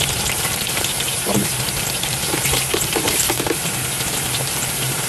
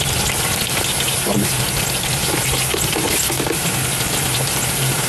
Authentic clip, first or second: second